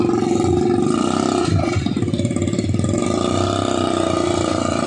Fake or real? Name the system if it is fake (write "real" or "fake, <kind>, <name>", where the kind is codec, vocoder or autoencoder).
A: real